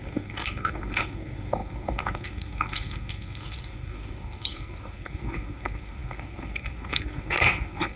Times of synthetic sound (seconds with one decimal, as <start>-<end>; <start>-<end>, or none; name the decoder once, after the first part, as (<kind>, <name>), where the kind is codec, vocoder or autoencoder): 0.0-8.0 (codec, SNAC)